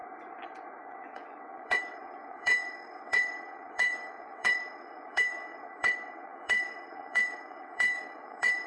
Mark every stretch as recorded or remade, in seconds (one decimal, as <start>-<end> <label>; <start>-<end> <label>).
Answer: 0.0-0.8 recorded; 0.8-8.7 remade